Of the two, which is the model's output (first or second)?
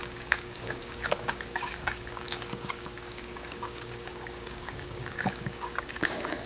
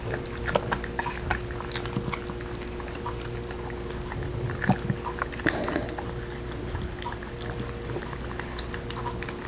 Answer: first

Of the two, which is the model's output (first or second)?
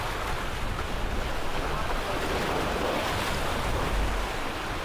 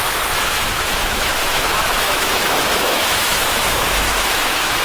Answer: second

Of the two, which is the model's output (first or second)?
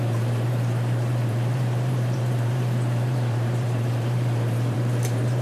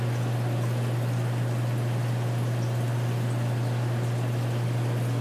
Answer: first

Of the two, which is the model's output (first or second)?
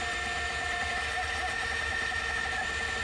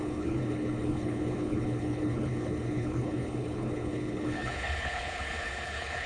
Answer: second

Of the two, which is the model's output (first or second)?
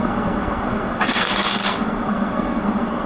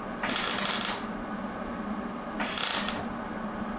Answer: first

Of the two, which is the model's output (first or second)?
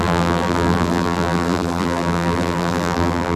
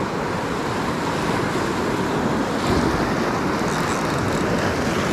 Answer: first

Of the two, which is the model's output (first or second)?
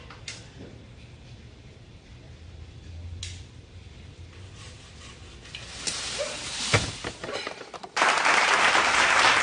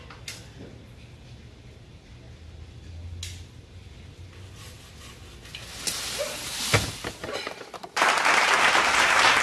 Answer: first